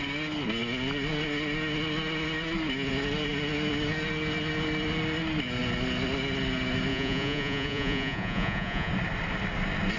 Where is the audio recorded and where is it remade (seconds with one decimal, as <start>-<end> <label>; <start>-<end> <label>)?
0.0-6.9 recorded; 6.9-8.9 remade; 8.9-10.0 recorded